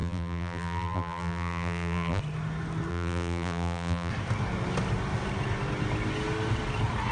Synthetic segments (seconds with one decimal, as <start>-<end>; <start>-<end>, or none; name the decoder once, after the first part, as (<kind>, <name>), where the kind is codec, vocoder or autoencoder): 0.0-2.2 (vocoder, BigVGAN v2); 2.9-4.1